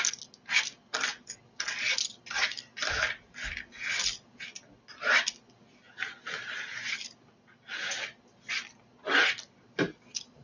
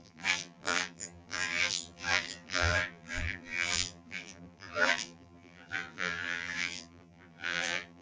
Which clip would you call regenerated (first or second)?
second